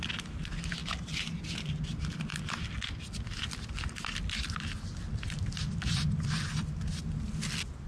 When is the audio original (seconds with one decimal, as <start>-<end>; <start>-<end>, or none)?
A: 0.0-7.9